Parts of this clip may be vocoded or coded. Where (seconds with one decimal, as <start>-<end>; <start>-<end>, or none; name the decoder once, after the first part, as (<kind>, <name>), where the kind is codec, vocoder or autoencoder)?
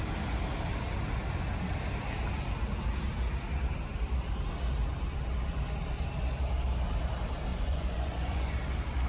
7.5-8.5 (vocoder, Vocos)